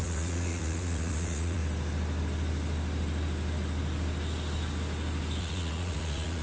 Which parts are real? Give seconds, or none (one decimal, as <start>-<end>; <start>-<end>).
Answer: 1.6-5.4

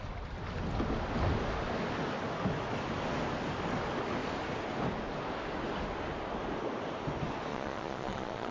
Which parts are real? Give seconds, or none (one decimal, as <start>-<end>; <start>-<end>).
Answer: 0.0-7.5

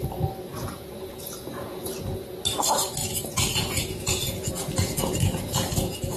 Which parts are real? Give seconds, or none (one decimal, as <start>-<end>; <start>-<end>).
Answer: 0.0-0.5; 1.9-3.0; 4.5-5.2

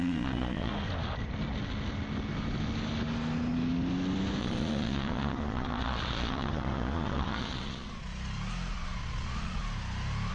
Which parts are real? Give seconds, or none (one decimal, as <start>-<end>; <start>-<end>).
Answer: 0.7-4.4; 8.1-8.7; 9.6-10.3

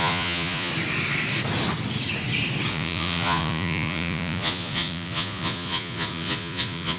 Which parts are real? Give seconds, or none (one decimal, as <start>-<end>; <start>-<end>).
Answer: 0.7-2.7

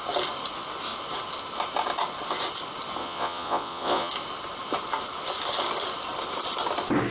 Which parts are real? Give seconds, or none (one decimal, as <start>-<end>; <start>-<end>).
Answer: 0.0-3.0; 4.1-7.1

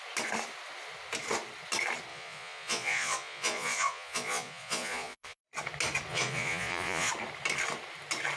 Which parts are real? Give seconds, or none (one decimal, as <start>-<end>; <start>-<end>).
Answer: 0.0-2.1; 5.4-6.1; 7.1-8.4

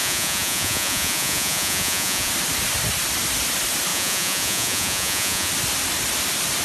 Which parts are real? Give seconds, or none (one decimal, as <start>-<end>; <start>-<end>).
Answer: 2.3-3.9; 5.5-6.6